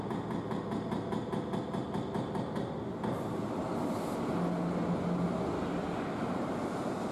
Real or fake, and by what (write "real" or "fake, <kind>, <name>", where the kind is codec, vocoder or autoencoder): real